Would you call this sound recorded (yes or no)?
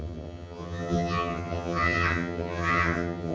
no